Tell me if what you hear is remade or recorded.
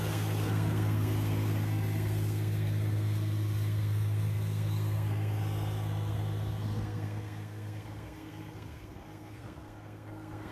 remade